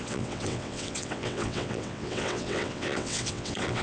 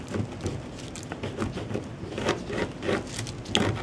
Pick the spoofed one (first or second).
first